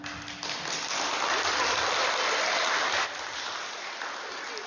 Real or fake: real